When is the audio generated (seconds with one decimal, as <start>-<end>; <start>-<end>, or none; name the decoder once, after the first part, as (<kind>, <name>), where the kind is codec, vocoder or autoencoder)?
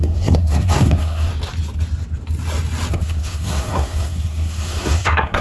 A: 0.0-1.3 (codec, SNAC); 2.9-5.4